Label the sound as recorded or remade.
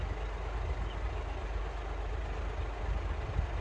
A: recorded